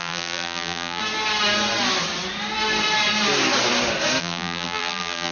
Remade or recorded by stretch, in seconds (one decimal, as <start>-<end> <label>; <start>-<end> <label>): 0.0-1.0 remade; 1.0-4.2 recorded; 4.2-5.3 remade